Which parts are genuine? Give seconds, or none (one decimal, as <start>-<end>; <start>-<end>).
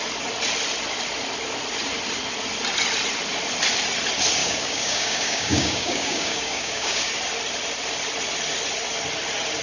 0.0-4.4; 7.1-9.6